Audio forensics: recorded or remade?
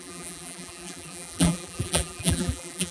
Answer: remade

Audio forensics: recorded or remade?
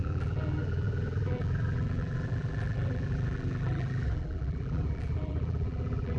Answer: remade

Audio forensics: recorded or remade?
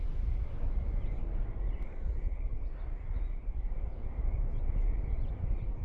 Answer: remade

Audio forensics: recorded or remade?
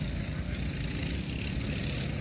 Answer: recorded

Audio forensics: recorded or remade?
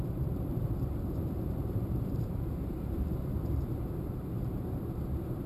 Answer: remade